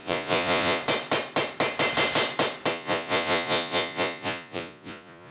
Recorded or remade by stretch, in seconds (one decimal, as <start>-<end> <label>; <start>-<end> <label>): 0.0-0.8 remade; 0.8-2.7 recorded; 2.7-5.3 remade

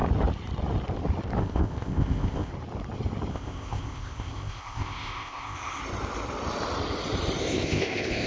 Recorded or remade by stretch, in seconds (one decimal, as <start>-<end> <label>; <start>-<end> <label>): 0.0-1.4 recorded; 1.4-2.5 remade; 2.5-3.3 recorded; 3.3-5.8 remade; 5.8-7.4 recorded; 7.4-8.3 remade

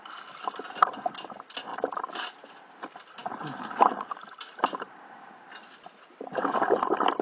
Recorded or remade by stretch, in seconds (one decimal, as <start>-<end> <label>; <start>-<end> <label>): 0.0-1.7 recorded; 1.7-2.5 remade; 2.5-3.2 recorded; 3.2-5.4 remade; 5.4-7.2 recorded

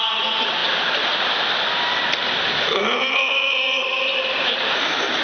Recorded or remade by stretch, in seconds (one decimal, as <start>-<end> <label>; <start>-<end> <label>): 0.0-5.2 recorded